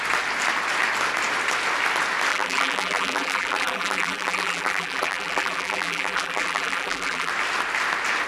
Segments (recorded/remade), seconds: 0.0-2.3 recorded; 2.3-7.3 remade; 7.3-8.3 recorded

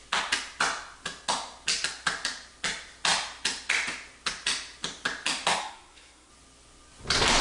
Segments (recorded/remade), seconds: 0.0-5.6 recorded; 5.6-6.3 remade; 6.3-7.4 recorded

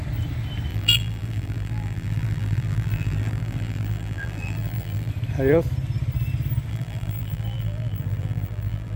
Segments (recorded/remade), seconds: 0.0-0.7 recorded; 0.7-5.1 remade; 5.1-6.7 recorded; 6.7-9.0 remade

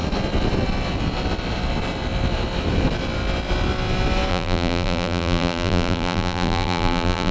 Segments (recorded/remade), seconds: 0.0-4.3 recorded; 4.3-7.3 remade

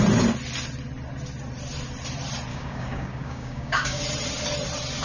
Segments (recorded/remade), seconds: 0.0-2.5 recorded; 2.5-4.0 remade; 4.0-5.0 recorded